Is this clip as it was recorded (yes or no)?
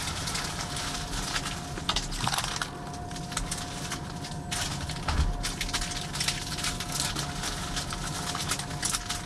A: yes